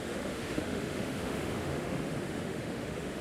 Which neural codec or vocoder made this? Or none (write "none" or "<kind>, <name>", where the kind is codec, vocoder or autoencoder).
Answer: autoencoder, DAC-VAE